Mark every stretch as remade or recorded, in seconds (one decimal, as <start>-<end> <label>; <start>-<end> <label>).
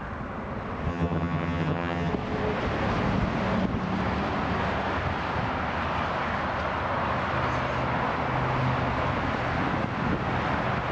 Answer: 0.0-0.9 recorded; 0.9-2.1 remade; 2.1-10.9 recorded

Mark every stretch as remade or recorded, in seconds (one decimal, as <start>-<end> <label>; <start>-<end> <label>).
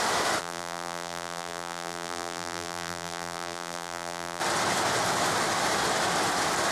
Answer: 0.0-0.4 recorded; 0.4-4.4 remade; 4.4-6.7 recorded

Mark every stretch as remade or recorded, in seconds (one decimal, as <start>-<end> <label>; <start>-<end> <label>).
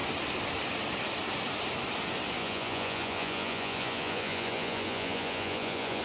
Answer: 0.0-2.4 recorded; 2.4-6.0 remade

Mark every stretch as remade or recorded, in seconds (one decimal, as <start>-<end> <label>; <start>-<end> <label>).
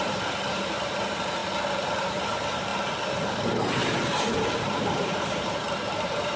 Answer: 0.0-1.4 remade; 1.4-2.1 recorded; 2.1-2.7 remade; 2.7-3.3 recorded; 3.3-6.4 remade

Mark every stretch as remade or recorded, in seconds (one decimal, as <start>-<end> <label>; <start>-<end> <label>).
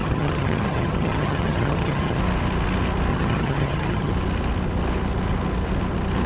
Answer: 0.0-2.2 remade; 2.2-3.1 recorded; 3.1-4.1 remade; 4.1-6.3 recorded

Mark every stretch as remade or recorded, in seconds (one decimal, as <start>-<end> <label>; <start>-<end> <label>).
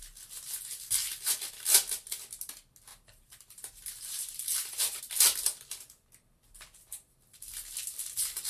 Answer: 0.0-2.9 recorded; 2.9-5.0 remade; 5.0-8.5 recorded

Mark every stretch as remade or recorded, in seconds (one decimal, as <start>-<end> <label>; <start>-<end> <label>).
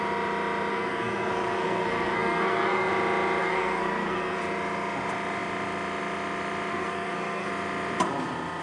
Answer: 0.0-0.7 recorded; 0.7-2.9 remade; 2.9-3.4 recorded; 3.4-4.4 remade; 4.4-6.7 recorded; 6.7-7.5 remade; 7.5-8.6 recorded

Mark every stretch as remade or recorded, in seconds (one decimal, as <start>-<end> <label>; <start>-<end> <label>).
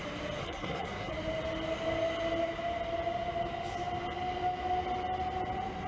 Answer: 0.0-0.4 recorded; 0.4-1.1 remade; 1.1-5.9 recorded